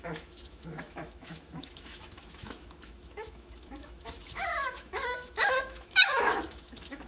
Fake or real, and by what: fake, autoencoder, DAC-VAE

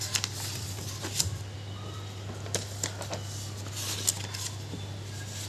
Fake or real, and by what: real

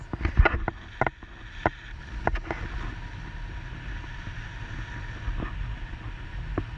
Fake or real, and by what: real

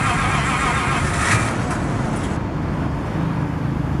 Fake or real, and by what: real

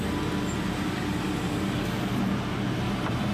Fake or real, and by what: real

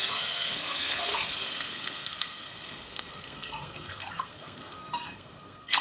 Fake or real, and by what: fake, codec, SNAC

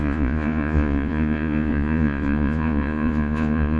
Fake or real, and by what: fake, vocoder, Vocos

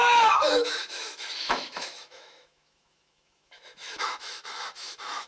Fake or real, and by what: fake, autoencoder, DAC-VAE